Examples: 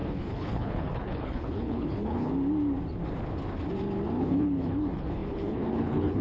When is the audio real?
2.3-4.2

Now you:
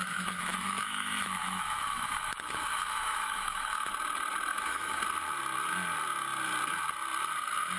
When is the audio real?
3.9-4.5; 5.0-7.8